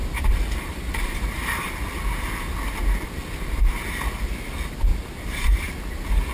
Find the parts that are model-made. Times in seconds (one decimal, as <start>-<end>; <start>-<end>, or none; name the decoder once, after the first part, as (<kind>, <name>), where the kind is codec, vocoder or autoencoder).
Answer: 0.0-1.7 (vocoder, BigVGAN v2); 4.9-5.7

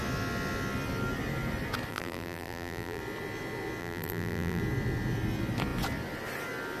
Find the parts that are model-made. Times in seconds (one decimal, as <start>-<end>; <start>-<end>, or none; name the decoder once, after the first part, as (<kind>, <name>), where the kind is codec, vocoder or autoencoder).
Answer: 1.9-3.0 (vocoder, BigVGAN v2); 3.8-4.6

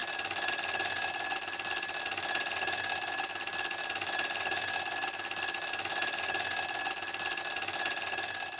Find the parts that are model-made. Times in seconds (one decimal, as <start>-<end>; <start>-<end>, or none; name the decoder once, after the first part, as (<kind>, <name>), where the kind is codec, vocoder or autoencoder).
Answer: none

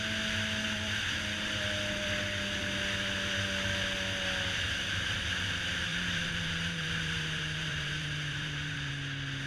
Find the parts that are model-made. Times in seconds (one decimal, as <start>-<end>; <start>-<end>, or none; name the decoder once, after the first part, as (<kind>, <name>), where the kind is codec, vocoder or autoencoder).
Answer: 5.9-8.9 (vocoder, BigVGAN v2)

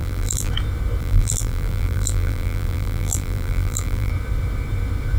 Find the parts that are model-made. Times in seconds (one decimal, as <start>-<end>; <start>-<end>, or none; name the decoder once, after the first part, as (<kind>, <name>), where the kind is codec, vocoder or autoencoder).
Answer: 0.0-0.5 (vocoder, BigVGAN v2); 1.0-4.1

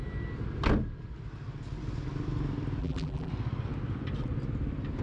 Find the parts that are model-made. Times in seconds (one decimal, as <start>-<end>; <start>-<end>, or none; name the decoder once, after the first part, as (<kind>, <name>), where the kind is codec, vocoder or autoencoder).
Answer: 2.8-3.3 (vocoder, BigVGAN v2)